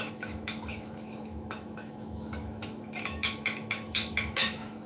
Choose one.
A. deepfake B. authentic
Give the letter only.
A